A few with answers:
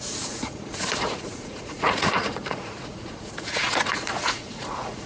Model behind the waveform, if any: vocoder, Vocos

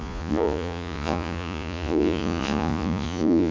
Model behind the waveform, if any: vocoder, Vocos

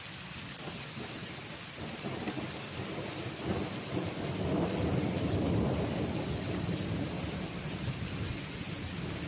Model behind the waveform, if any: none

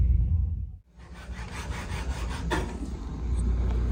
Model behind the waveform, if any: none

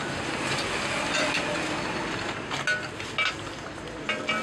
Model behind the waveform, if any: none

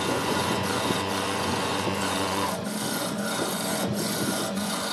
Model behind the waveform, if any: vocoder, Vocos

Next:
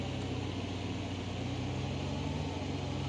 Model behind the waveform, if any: none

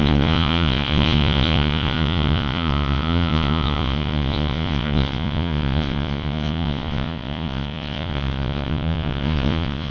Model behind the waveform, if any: vocoder, Vocos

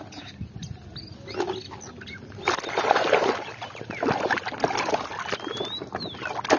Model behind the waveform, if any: none